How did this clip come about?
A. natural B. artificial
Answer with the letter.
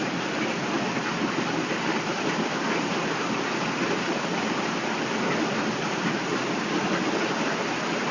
A